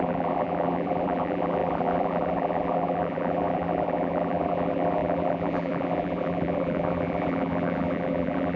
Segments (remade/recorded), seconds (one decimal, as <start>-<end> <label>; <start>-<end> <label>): 0.0-8.6 remade

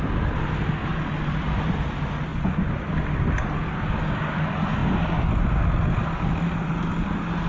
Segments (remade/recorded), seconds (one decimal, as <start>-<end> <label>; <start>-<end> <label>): 0.0-7.5 recorded